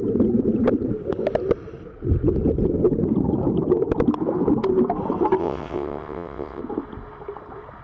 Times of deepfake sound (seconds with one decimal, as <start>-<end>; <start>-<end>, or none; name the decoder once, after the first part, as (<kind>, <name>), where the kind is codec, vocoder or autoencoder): 5.4-6.6 (vocoder, WaveNeXt)